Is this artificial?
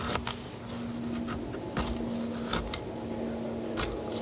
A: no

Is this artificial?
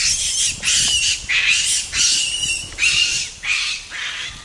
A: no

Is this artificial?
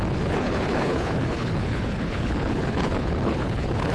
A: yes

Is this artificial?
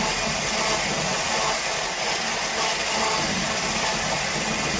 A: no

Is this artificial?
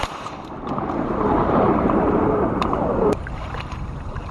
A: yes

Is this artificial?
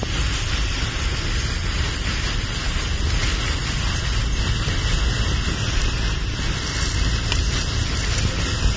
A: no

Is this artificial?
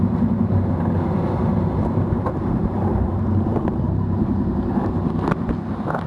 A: no